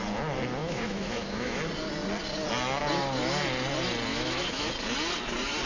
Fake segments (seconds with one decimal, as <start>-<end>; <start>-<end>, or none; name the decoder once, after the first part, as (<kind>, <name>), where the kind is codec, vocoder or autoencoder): 0.6-1.6 (autoencoder, DAC-VAE); 4.1-4.7

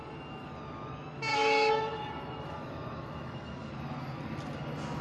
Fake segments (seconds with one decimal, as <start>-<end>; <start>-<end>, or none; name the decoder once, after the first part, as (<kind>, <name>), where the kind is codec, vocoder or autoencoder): 1.3-3.7 (autoencoder, DAC-VAE)